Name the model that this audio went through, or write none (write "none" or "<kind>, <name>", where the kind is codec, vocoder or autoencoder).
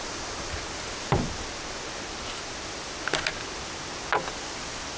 none